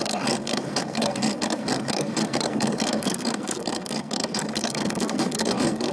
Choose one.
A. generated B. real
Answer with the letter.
A